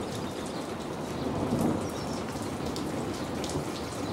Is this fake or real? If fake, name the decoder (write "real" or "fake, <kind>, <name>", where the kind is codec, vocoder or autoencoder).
real